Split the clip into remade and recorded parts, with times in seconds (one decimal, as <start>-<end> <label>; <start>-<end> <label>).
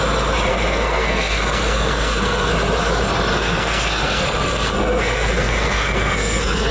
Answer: 0.0-0.5 recorded; 0.5-2.5 remade; 2.5-3.3 recorded; 3.3-6.7 remade